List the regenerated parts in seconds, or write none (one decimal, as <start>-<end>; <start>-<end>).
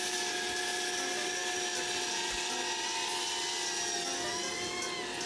none